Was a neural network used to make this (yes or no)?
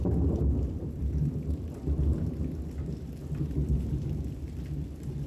no